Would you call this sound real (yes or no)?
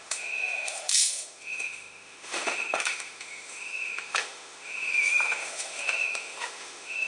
no